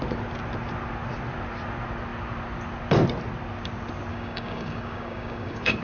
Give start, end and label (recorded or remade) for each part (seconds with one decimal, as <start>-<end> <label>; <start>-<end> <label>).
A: 0.0-4.1 recorded; 4.1-5.8 remade